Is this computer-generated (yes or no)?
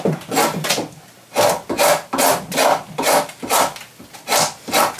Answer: no